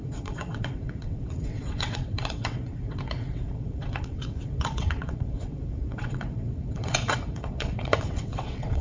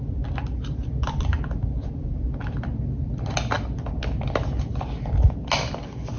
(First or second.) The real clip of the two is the second